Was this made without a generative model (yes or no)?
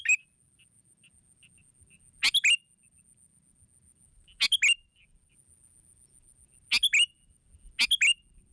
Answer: yes